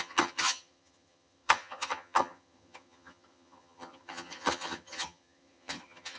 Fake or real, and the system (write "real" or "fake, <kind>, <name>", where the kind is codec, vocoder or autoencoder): fake, vocoder, HiFi-GAN